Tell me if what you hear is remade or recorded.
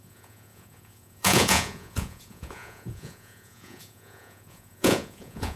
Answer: remade